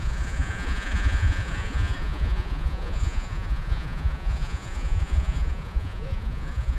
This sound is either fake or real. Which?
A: fake